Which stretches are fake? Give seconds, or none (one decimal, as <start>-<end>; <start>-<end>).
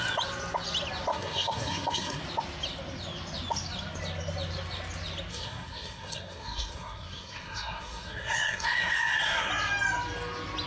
1.1-2.2; 5.3-9.5